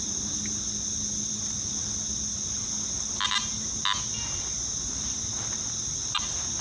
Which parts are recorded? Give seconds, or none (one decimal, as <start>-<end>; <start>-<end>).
0.0-6.6